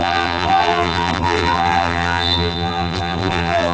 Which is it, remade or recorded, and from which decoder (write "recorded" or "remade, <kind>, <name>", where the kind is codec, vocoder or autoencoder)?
remade, vocoder, BigVGAN v2